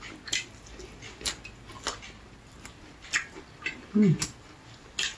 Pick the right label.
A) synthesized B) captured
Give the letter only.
B